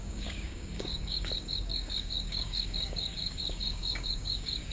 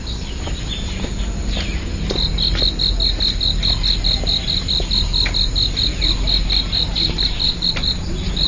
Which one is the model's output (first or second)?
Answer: first